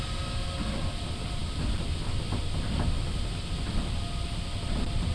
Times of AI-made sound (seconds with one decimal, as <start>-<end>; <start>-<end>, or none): none

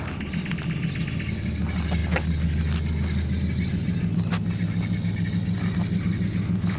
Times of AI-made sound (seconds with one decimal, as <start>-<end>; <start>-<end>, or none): none

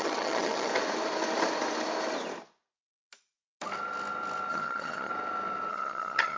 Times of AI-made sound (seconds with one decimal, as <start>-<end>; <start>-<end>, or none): 0.0-0.7; 4.5-5.1; 5.7-6.4